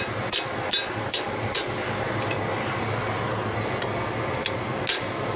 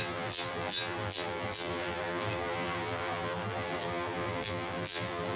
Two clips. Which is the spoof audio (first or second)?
second